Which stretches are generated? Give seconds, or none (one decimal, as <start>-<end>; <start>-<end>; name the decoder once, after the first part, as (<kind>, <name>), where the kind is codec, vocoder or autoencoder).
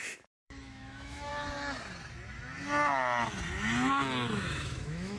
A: 0.0-1.3 (autoencoder, DAC-VAE); 4.3-5.2